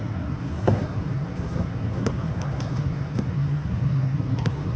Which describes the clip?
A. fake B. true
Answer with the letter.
A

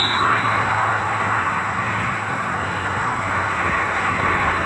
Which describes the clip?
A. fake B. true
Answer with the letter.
A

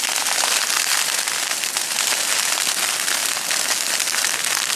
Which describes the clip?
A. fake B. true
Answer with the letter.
B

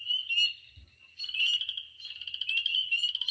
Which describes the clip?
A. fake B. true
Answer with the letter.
B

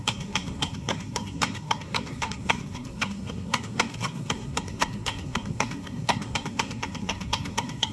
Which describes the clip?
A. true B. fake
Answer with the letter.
B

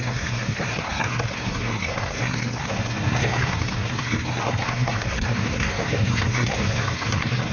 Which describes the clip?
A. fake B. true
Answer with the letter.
A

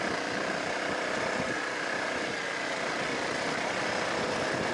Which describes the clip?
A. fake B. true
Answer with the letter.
B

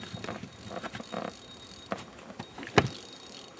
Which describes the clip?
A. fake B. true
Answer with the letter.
B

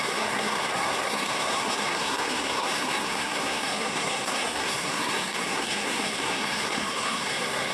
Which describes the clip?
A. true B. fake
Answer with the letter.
B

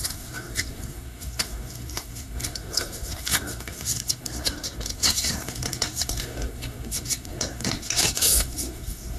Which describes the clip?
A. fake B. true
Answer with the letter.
A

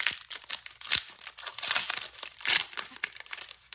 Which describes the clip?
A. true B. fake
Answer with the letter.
A